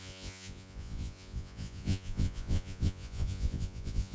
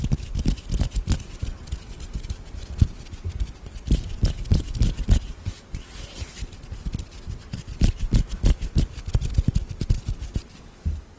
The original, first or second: second